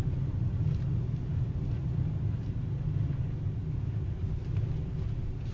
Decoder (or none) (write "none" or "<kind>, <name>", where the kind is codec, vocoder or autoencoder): none